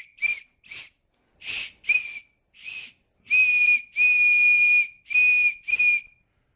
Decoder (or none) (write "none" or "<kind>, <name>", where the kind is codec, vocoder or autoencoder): none